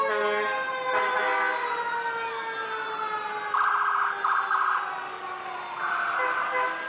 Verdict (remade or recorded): recorded